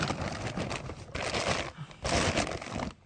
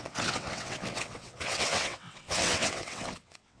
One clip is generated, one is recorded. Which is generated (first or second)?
second